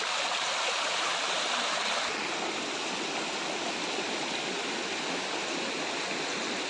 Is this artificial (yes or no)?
no